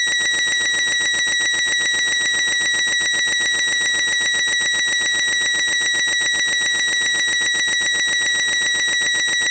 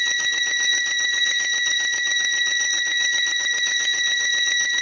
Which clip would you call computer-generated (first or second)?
second